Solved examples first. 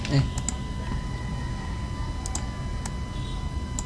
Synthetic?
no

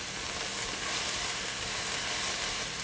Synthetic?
no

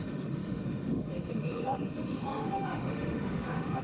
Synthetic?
yes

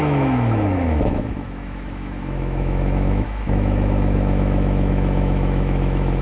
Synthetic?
yes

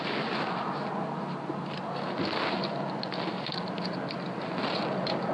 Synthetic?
no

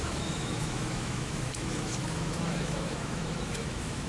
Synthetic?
yes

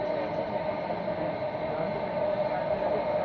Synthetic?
no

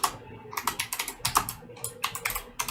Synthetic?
no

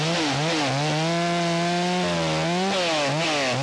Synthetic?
no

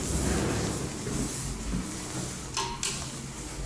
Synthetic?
no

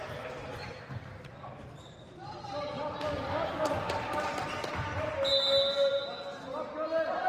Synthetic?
no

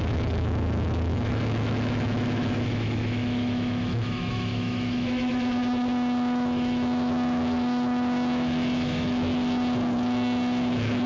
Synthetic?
yes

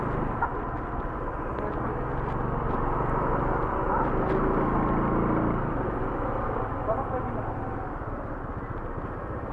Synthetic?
no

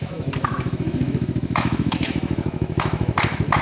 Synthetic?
yes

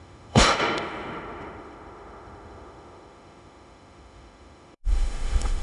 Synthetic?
yes